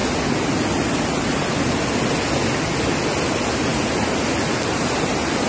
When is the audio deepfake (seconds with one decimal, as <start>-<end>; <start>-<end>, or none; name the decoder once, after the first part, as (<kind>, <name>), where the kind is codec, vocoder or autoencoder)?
none